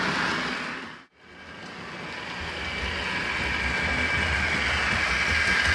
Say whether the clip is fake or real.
real